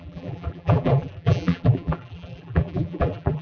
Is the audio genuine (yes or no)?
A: no